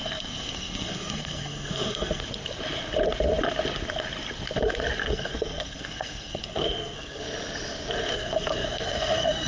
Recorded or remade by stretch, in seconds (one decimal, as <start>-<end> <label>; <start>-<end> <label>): 0.0-2.2 remade; 2.2-5.0 recorded; 5.0-7.2 remade; 7.2-8.1 recorded; 8.1-9.5 remade